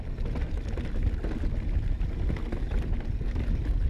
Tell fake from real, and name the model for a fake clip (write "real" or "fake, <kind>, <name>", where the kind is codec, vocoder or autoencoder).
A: real